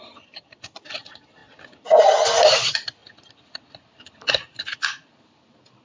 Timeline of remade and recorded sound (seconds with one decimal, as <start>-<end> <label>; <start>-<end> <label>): 0.0-1.4 remade; 1.4-2.6 recorded; 2.6-5.8 remade